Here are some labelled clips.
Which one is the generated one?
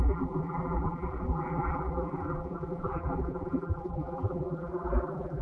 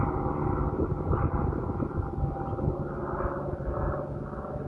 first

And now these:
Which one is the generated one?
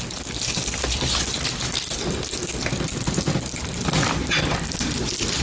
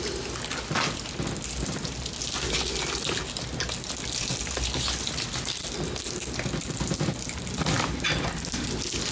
first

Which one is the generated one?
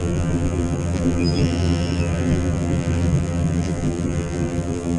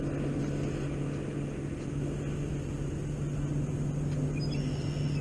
first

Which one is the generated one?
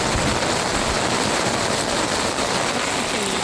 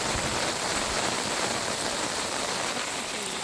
second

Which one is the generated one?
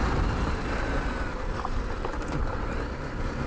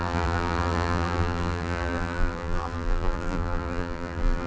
second